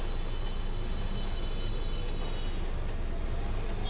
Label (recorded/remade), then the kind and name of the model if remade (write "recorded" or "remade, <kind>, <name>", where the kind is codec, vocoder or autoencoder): recorded